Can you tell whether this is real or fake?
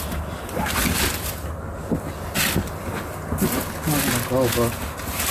real